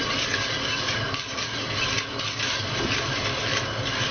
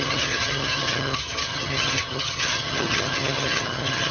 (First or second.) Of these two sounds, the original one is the first